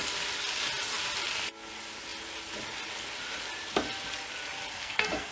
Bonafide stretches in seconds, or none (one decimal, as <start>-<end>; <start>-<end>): 0.0-4.7